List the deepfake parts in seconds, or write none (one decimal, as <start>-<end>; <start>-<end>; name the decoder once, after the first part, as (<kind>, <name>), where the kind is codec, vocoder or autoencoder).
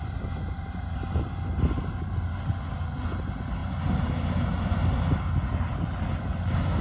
none